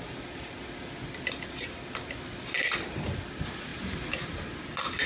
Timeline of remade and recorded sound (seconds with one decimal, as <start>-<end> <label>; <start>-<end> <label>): 0.0-5.1 recorded